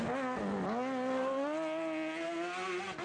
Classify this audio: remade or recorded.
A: recorded